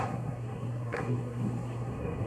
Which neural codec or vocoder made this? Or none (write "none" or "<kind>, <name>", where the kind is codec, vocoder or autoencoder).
codec, SNAC